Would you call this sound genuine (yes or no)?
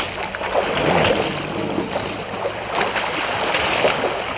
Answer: yes